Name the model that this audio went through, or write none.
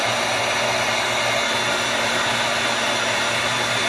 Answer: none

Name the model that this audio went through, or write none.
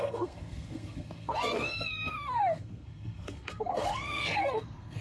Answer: codec, SNAC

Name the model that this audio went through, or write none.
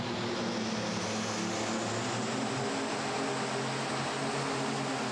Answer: none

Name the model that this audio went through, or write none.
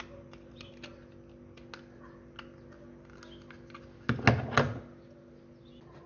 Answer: none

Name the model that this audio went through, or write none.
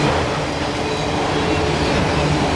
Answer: none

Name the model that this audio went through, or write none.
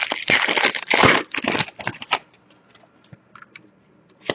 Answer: none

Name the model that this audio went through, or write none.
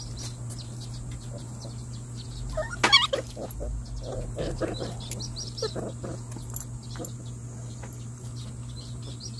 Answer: none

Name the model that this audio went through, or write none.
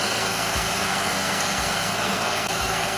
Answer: codec, SNAC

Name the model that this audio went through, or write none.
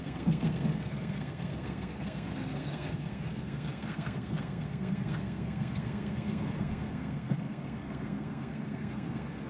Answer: codec, SNAC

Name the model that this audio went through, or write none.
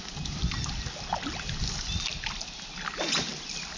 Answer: none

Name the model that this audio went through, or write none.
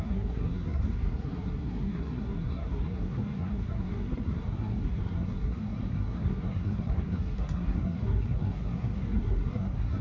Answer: codec, SNAC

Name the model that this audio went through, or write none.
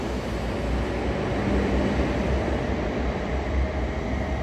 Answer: none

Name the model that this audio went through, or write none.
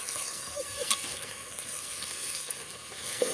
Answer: codec, SNAC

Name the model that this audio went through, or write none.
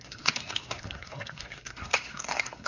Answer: codec, SNAC